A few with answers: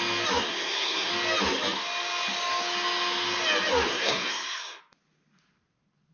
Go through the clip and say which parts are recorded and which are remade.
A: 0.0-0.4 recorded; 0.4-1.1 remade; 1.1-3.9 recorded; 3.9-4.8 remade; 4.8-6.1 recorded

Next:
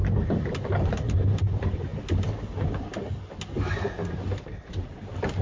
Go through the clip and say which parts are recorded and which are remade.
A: 0.0-0.9 recorded; 0.9-1.9 remade; 1.9-4.4 recorded; 4.4-5.4 remade

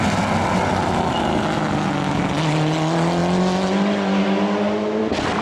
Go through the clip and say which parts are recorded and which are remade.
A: 0.0-5.4 recorded